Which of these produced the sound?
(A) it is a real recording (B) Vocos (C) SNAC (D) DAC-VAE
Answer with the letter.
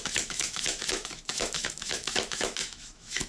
D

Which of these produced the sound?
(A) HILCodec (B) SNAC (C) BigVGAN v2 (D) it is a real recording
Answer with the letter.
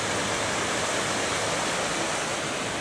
D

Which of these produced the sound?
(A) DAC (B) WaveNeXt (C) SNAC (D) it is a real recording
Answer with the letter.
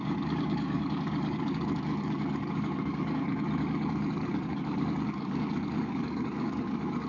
A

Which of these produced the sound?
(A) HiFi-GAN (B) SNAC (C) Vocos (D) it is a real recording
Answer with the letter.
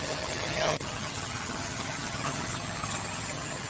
A